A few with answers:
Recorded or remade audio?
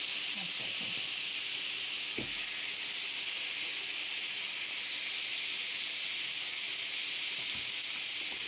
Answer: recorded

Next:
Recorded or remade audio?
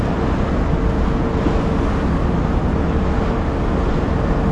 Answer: recorded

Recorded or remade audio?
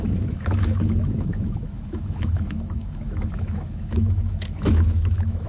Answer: remade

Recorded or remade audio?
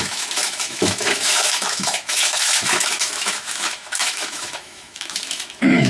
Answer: remade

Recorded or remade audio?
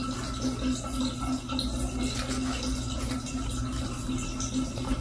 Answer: recorded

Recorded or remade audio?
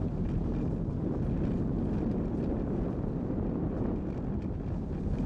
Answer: recorded